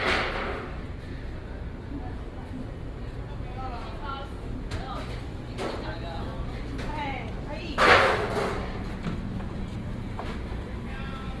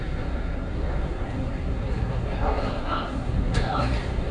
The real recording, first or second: first